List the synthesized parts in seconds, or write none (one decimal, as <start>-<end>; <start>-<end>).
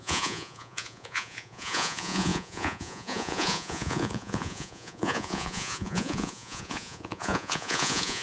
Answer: 0.0-8.2